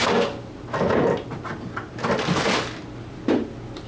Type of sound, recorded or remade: recorded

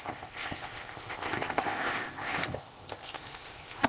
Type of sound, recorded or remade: remade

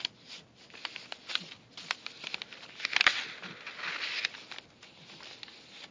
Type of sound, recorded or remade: recorded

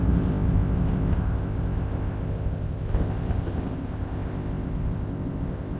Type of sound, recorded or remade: remade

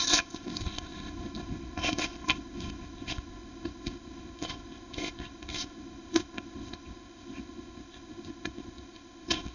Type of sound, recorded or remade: remade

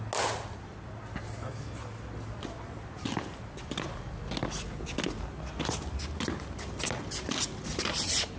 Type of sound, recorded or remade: recorded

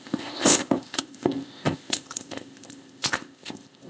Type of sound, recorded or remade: remade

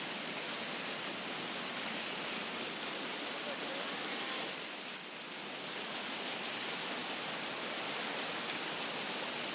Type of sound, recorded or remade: recorded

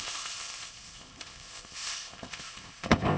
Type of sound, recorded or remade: remade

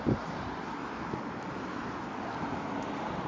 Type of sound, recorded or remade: recorded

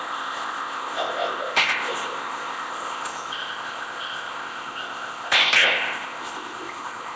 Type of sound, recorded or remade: remade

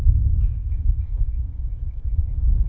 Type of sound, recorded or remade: remade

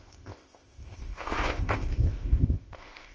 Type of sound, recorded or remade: remade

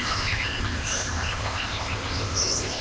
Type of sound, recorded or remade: remade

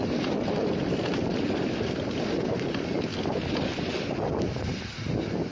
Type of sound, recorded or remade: recorded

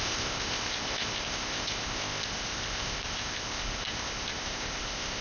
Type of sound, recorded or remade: remade